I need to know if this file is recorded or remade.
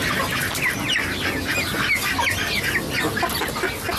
recorded